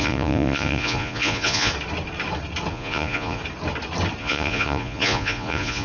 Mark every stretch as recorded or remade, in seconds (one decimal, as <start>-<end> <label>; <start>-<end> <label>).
0.0-1.7 remade; 1.7-2.7 recorded; 2.7-3.4 remade; 3.4-4.2 recorded; 4.2-5.8 remade